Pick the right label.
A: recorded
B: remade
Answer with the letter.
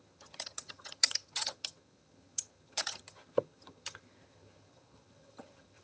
B